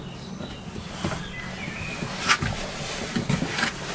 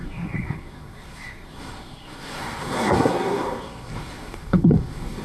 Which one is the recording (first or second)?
first